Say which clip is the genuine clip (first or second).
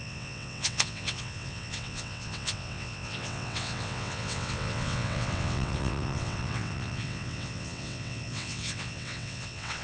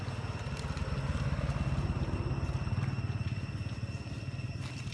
second